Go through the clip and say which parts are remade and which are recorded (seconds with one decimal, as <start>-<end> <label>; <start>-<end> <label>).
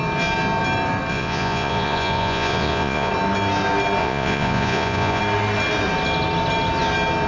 0.0-1.1 recorded; 1.1-3.1 remade; 3.1-4.0 recorded; 4.0-5.2 remade; 5.2-7.3 recorded